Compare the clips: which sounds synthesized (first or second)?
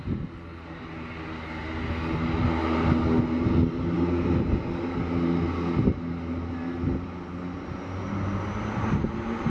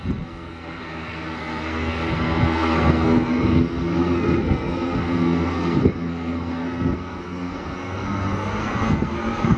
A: second